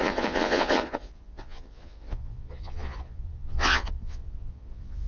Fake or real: fake